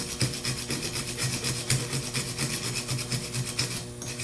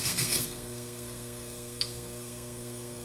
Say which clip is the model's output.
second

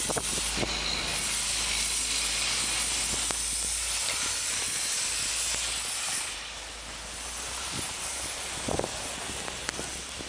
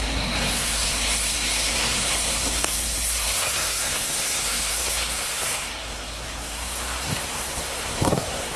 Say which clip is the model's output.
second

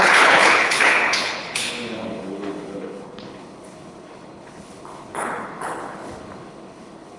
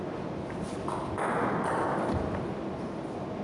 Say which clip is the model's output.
first